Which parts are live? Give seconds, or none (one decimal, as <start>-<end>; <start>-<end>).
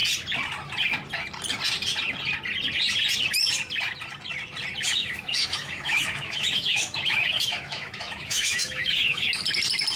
0.0-5.0; 9.4-10.0